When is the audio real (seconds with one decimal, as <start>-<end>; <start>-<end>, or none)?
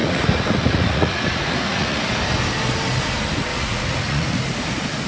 2.1-3.5; 4.4-5.1